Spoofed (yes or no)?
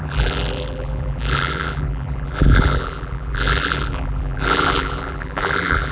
yes